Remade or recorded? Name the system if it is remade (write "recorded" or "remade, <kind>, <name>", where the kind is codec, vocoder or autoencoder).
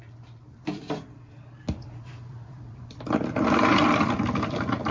remade, vocoder, BigVGAN v2